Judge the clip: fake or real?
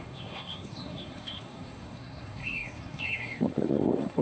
fake